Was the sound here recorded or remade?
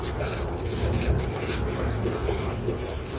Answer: recorded